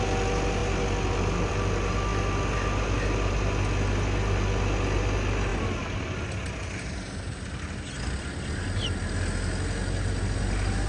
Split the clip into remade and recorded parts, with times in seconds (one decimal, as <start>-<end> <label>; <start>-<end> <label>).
0.0-10.9 recorded